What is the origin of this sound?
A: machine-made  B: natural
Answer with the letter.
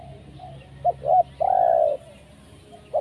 B